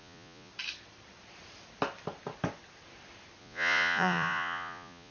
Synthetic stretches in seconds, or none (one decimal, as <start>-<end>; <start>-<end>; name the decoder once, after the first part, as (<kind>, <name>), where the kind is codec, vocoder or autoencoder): 0.0-0.5 (vocoder, Vocos); 3.4-5.1